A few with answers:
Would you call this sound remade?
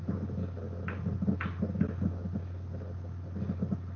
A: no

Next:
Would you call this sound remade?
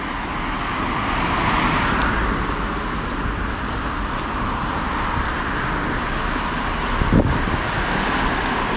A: no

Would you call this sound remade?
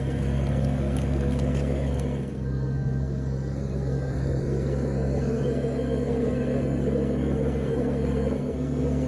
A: yes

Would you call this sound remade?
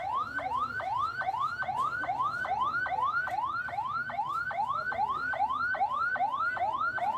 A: no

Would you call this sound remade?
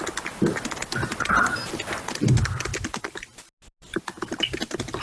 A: no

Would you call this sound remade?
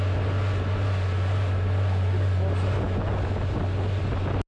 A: no